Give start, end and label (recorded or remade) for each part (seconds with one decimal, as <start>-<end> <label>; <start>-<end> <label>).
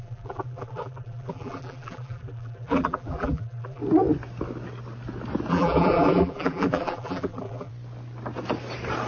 0.0-3.8 remade; 3.8-5.5 recorded; 5.5-7.7 remade; 7.7-9.1 recorded